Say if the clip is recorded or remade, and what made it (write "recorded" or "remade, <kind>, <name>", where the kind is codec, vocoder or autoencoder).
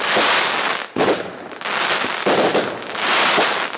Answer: recorded